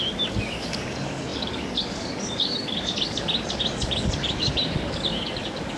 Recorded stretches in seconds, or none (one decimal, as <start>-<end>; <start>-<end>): none